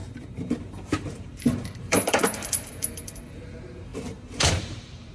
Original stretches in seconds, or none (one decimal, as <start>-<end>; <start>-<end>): none

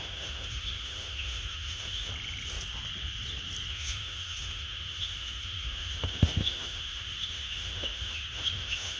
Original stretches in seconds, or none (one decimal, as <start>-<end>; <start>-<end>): 2.1-3.7

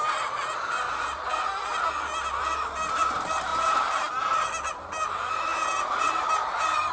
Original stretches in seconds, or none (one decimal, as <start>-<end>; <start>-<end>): 0.0-3.5; 4.1-5.5; 6.3-6.9

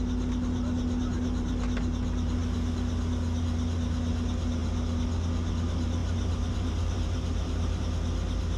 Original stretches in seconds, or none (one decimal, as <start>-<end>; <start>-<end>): 0.0-6.0; 7.8-8.6